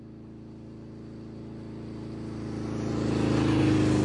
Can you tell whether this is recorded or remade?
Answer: recorded